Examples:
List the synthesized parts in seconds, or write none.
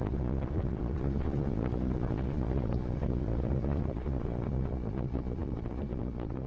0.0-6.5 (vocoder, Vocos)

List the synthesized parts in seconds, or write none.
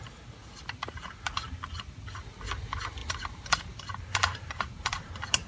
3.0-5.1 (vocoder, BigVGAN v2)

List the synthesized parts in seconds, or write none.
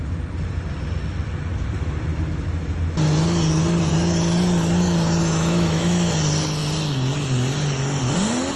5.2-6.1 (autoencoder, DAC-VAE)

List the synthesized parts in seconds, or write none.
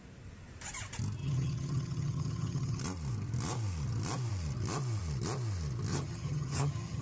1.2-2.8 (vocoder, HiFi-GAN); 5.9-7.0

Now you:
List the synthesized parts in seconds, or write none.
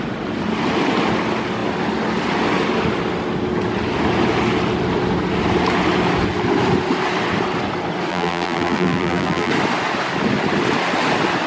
8.1-9.5 (vocoder, BigVGAN v2)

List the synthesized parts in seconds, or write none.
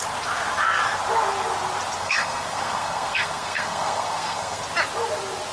2.0-4.6 (codec, SNAC)